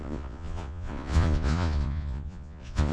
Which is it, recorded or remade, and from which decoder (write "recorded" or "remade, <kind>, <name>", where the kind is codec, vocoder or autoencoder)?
remade, vocoder, Vocos